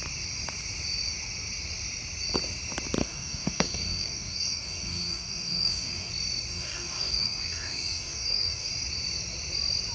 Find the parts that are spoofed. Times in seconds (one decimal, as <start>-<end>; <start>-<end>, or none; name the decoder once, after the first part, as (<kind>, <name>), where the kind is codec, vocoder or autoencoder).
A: 3.0-6.1 (codec, DAC); 6.5-8.7